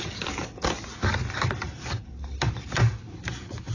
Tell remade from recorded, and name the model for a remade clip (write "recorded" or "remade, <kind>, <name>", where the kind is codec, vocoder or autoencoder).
recorded